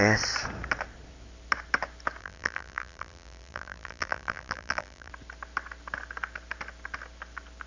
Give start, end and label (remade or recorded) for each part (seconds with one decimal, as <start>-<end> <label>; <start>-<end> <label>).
0.0-2.2 recorded; 2.2-5.1 remade; 5.1-7.7 recorded